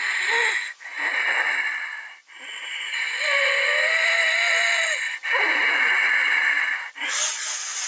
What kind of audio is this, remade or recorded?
recorded